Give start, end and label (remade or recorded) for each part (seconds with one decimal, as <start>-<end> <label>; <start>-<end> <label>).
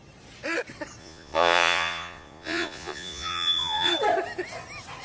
0.0-1.0 recorded; 1.0-3.9 remade; 3.9-5.0 recorded